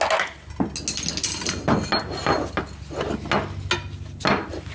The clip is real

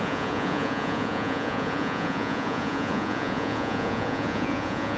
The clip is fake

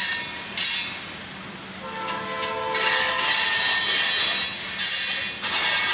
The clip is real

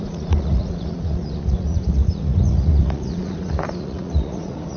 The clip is fake